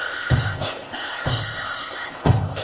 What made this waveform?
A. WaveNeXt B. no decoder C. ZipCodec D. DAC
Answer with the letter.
C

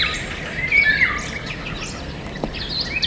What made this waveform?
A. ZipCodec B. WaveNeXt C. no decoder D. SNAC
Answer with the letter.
C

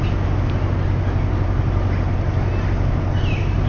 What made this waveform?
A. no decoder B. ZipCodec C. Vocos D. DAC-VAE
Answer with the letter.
A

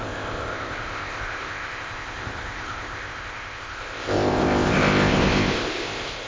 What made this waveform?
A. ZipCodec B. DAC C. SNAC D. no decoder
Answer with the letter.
A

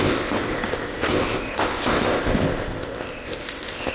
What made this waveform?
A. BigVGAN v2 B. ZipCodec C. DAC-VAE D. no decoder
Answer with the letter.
B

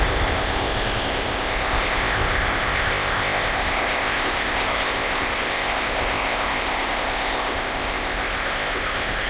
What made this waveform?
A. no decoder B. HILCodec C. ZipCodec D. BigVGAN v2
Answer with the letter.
C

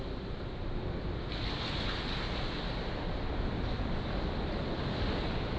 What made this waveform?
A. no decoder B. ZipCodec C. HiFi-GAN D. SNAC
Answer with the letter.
A